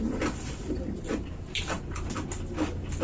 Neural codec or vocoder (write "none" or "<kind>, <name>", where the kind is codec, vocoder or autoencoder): none